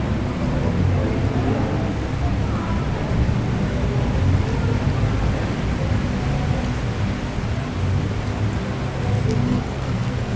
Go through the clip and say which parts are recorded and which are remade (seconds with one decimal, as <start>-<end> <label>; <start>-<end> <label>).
0.0-9.4 recorded; 9.4-10.4 remade